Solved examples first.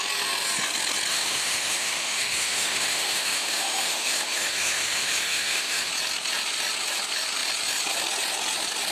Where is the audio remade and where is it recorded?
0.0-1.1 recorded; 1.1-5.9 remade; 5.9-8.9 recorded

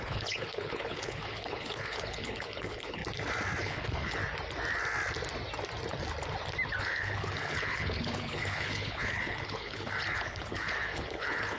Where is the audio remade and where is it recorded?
0.0-3.0 remade; 3.0-3.6 recorded; 3.6-4.2 remade; 4.2-6.8 recorded; 6.8-11.6 remade